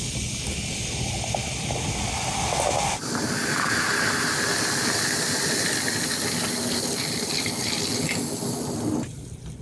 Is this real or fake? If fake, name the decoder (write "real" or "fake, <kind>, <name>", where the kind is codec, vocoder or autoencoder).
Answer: real